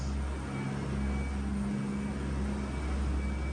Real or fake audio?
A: real